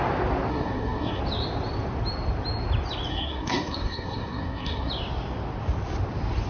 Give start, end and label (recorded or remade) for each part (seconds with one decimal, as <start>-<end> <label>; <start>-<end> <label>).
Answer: 0.0-0.5 recorded; 0.5-1.2 remade; 1.2-3.1 recorded; 3.1-4.9 remade; 4.9-6.5 recorded

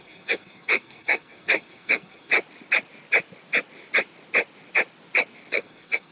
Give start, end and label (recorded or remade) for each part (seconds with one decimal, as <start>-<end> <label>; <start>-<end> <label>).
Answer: 0.0-2.3 remade; 2.3-5.5 recorded; 5.5-6.1 remade